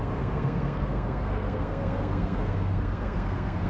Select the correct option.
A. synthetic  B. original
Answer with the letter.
A